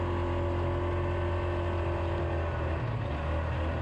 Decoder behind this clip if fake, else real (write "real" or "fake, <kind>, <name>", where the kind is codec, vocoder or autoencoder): real